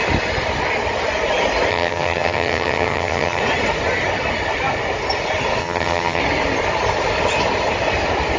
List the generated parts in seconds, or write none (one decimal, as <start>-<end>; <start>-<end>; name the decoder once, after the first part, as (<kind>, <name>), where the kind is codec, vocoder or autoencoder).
1.7-3.4 (vocoder, HiFi-GAN); 5.6-6.2